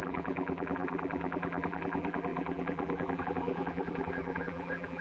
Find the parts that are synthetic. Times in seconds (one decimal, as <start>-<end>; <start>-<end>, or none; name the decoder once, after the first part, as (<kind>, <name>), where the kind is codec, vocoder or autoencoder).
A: 0.0-5.0 (vocoder, BigVGAN v2)